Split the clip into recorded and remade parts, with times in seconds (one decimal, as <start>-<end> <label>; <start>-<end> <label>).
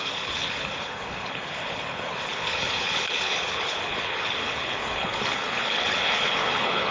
0.0-6.9 remade